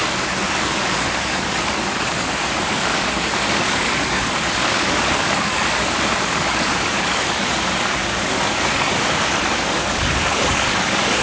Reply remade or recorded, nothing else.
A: remade